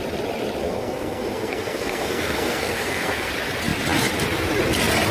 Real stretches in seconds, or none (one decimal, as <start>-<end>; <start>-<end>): 0.0-0.6; 3.3-5.1